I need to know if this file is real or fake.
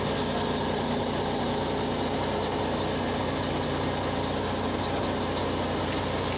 real